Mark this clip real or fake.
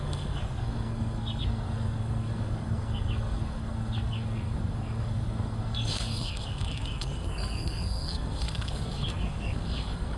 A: fake